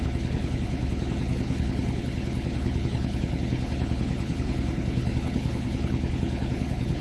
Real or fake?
fake